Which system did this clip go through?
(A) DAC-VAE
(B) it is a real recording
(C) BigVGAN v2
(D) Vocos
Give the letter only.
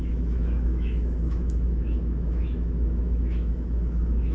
A